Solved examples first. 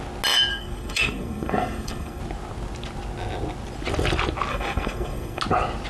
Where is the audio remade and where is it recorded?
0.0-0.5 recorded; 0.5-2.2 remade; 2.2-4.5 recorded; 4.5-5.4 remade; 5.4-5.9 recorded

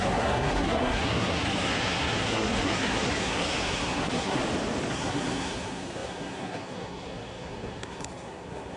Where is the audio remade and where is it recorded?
0.0-4.4 remade; 4.4-4.9 recorded; 4.9-8.8 remade

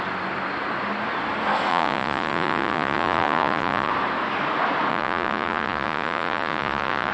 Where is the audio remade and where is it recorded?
0.0-1.7 recorded; 1.7-3.9 remade; 3.9-4.9 recorded; 4.9-7.1 remade

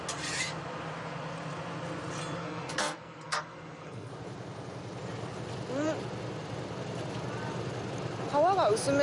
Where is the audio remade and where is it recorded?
0.0-2.4 recorded; 2.4-4.1 remade; 4.1-9.0 recorded

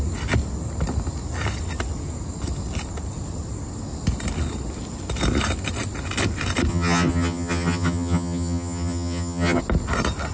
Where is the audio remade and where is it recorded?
0.0-6.7 recorded; 6.7-9.6 remade; 9.6-10.3 recorded

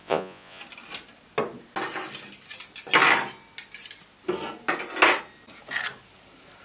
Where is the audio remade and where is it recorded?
0.0-0.6 remade; 0.6-6.6 recorded

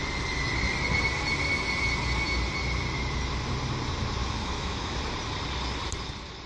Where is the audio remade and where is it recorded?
0.0-4.2 recorded; 4.2-5.0 remade; 5.0-6.5 recorded

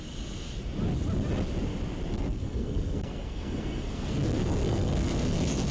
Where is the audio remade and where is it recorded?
0.0-2.1 recorded; 2.1-5.7 remade